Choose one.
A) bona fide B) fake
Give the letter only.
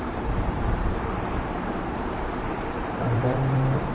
B